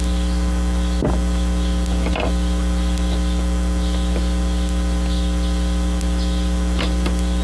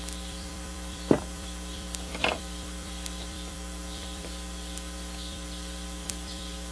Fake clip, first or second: second